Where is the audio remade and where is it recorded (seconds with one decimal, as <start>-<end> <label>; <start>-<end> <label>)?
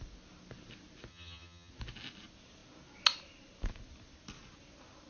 0.0-1.1 recorded; 1.1-1.7 remade; 1.7-5.1 recorded